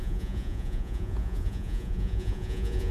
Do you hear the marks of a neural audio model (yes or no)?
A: yes